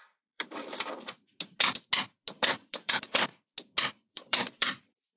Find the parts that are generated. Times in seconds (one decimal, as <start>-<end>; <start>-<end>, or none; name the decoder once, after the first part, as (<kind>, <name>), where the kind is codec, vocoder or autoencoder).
0.0-1.3 (vocoder, BigVGAN v2); 2.7-3.3; 3.9-5.2